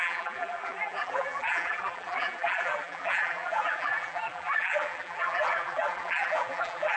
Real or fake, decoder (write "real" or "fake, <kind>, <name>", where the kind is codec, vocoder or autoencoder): fake, vocoder, BigVGAN v2